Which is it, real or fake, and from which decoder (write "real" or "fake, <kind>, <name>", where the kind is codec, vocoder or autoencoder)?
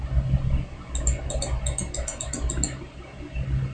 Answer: real